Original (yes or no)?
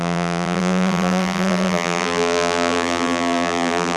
no